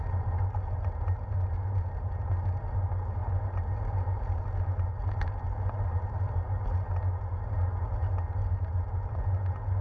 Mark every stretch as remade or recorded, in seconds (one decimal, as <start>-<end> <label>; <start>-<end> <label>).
0.0-9.8 recorded